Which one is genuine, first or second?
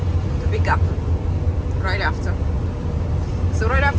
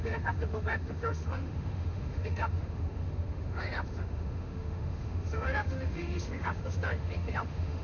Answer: first